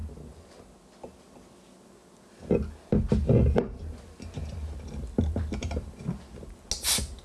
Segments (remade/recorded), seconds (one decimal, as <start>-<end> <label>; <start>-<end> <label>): 0.0-7.2 recorded